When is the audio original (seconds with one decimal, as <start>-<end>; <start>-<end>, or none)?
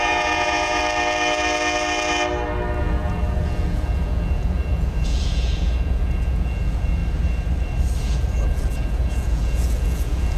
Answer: 0.8-2.8; 7.0-8.0